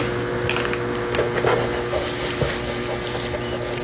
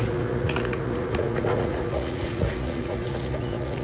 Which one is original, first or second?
first